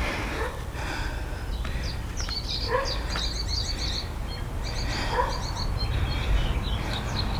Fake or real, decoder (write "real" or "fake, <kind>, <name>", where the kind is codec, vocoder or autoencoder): real